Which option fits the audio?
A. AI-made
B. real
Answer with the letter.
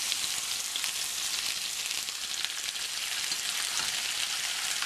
B